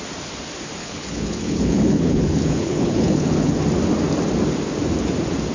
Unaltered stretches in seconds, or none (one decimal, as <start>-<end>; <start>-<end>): 0.0-0.8; 3.6-5.5